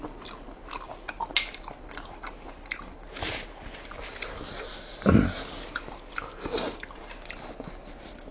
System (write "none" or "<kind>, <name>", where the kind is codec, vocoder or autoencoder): none